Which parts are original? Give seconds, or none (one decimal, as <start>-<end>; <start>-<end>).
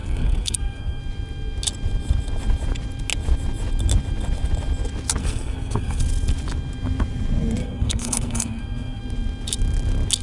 1.0-5.2; 6.0-7.6; 9.0-10.2